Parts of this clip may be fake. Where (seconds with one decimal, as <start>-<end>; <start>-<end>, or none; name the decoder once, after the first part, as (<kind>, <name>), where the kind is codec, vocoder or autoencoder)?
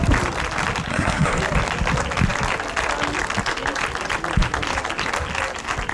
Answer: 0.9-1.4 (codec, SNAC)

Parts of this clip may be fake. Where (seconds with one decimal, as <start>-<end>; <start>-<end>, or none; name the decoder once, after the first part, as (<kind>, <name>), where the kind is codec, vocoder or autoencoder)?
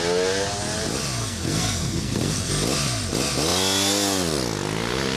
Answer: 1.2-2.5 (codec, SNAC)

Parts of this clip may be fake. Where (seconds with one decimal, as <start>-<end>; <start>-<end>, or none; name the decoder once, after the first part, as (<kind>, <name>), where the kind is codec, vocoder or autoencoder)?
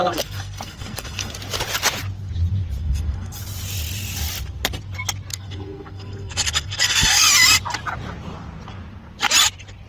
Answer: 0.0-1.3 (codec, SNAC); 2.8-3.4; 5.3-7.3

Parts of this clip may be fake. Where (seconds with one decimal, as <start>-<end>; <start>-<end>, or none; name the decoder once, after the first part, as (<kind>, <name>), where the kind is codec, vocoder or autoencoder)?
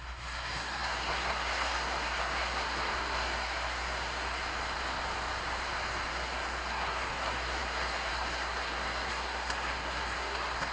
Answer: 0.0-4.4 (codec, SNAC); 6.1-10.7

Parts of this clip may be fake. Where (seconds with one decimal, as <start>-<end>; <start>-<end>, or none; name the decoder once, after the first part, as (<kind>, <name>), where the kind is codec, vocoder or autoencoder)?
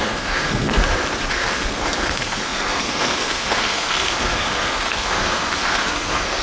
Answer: 0.0-0.8 (codec, SNAC); 1.3-6.4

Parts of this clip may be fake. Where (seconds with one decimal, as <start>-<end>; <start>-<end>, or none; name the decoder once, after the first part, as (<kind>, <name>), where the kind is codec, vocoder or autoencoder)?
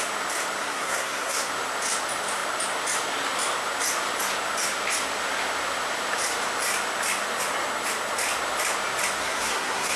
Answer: 0.6-1.5 (codec, SNAC); 9.2-10.0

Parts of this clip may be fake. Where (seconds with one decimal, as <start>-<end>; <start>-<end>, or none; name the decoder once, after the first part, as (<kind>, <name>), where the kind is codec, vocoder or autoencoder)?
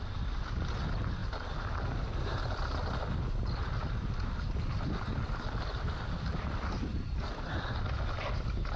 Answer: none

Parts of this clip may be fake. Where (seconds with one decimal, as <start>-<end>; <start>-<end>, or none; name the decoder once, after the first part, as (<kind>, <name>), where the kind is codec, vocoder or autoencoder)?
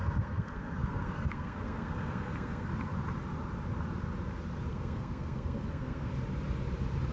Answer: 0.0-2.7 (codec, SNAC); 4.7-6.1